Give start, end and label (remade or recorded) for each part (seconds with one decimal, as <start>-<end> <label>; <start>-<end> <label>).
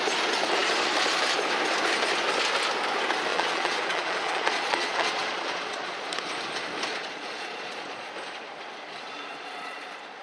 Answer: 0.0-3.3 recorded; 3.3-6.1 remade; 6.1-6.9 recorded; 6.9-8.1 remade; 8.1-9.3 recorded; 9.3-10.2 remade